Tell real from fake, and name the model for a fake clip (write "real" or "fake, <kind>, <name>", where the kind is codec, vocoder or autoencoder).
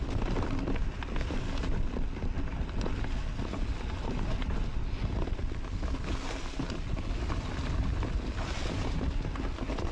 real